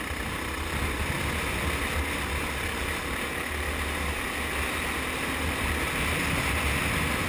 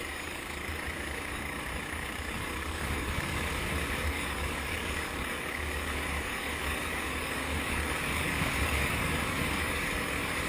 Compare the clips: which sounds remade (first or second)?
second